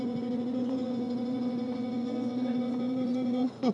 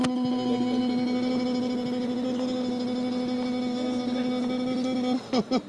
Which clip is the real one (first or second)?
second